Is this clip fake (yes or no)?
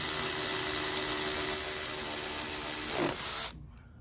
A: no